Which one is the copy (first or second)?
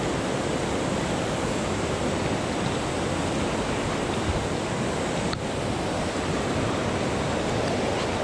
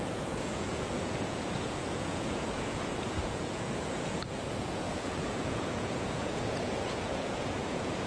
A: second